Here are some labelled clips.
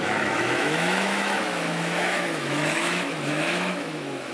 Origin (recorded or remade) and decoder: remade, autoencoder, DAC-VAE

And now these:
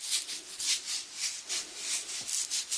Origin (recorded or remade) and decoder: recorded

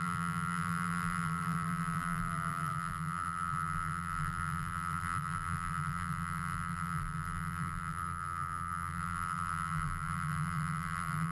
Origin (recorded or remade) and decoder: remade, vocoder, BigVGAN v2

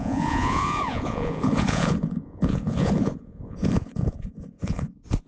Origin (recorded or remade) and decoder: remade, vocoder, Vocos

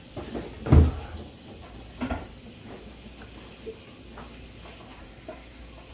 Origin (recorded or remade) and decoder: recorded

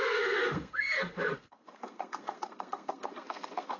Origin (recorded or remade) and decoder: remade, codec, SNAC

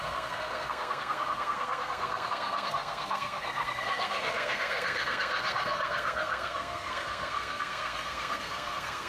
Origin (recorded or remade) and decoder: remade, codec, SNAC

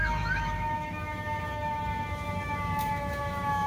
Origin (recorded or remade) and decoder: remade, autoencoder, DAC-VAE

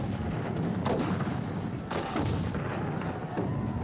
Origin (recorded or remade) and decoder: recorded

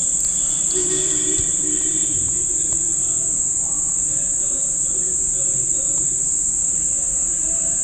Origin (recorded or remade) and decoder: remade, vocoder, BigVGAN v2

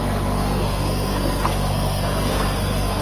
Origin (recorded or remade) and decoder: remade, codec, SNAC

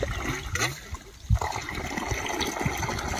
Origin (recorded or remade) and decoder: recorded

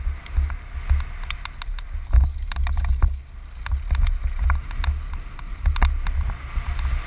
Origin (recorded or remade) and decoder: recorded